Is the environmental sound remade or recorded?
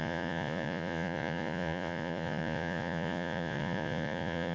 remade